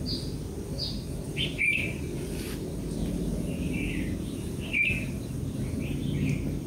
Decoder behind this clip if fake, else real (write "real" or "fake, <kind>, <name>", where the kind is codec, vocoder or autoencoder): real